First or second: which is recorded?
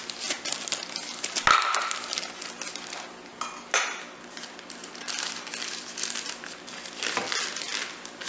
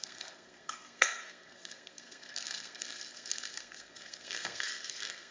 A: first